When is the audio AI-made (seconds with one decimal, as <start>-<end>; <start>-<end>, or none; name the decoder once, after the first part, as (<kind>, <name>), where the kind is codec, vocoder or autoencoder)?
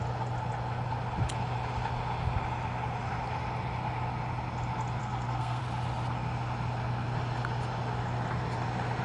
5.0-5.6 (codec, SNAC)